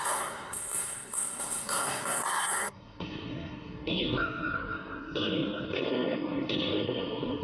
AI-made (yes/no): yes